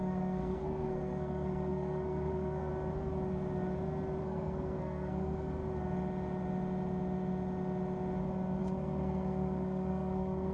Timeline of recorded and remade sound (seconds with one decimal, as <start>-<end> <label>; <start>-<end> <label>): 0.0-2.7 remade; 2.7-4.2 recorded; 4.2-5.6 remade; 5.6-8.6 recorded; 8.6-10.5 remade